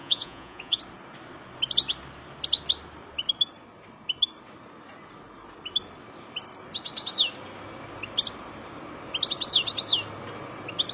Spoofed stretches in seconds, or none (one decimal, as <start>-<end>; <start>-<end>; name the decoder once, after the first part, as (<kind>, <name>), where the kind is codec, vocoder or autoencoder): 0.0-0.8 (vocoder, Vocos)

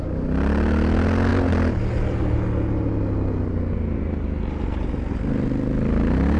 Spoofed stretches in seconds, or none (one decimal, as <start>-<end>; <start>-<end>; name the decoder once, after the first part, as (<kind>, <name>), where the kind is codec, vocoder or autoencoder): none